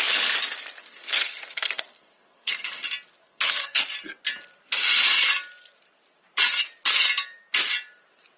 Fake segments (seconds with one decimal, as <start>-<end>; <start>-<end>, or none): 0.8-2.7; 3.2-3.8

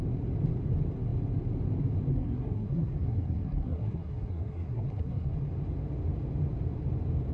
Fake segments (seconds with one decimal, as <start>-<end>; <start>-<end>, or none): 2.1-5.3

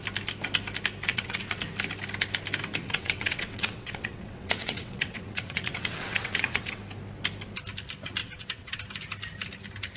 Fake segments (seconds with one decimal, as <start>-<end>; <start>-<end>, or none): 1.1-1.6; 2.8-6.8; 8.2-8.8

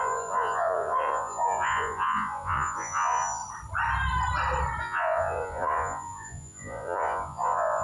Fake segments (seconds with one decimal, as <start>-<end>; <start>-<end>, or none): 0.0-3.4; 4.8-7.8